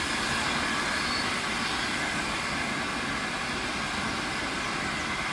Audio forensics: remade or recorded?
recorded